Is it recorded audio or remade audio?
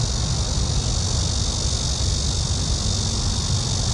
recorded